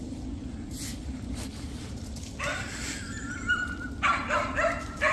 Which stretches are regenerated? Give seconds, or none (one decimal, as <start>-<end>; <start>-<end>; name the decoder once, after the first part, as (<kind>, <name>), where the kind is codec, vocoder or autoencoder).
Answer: 0.9-4.0 (vocoder, BigVGAN v2)